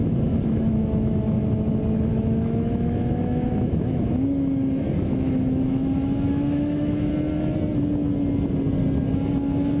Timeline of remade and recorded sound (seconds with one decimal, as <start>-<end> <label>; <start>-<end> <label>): 0.0-1.7 remade; 1.7-2.1 recorded; 2.1-7.1 remade; 7.1-9.8 recorded